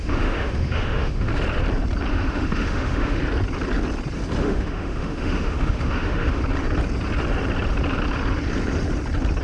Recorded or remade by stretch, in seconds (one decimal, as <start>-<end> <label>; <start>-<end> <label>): 0.0-1.3 remade; 1.3-2.1 recorded; 2.1-3.2 remade; 3.2-4.4 recorded; 4.4-6.4 remade; 6.4-9.4 recorded